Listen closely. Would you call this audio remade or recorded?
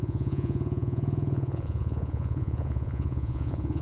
remade